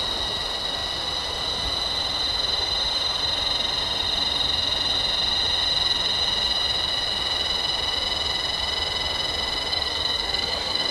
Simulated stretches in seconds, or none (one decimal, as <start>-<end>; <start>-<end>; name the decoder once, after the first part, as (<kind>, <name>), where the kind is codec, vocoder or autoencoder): 9.7-10.9 (codec, SNAC)